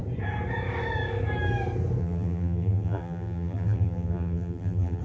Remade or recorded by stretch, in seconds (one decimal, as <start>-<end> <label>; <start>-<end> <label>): 0.0-2.0 recorded; 2.0-5.0 remade